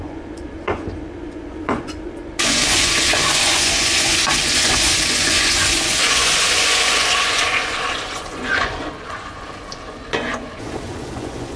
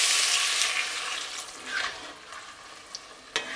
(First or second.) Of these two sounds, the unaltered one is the second